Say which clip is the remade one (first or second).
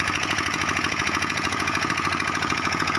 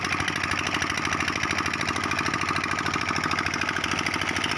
first